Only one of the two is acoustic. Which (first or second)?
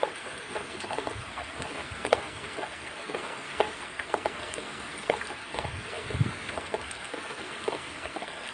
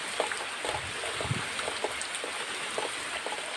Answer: second